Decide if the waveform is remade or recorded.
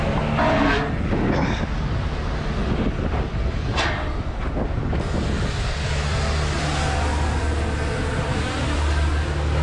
recorded